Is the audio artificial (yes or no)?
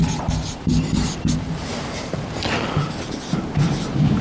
no